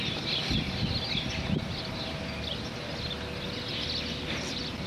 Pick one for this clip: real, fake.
real